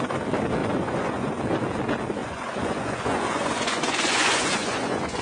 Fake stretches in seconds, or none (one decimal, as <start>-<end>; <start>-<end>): 0.6-1.4; 2.2-5.2